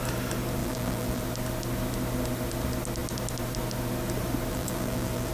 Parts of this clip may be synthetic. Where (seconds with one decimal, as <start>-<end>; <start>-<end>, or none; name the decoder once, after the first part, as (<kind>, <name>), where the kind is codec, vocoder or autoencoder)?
0.6-1.2 (vocoder, BigVGAN v2); 4.5-5.3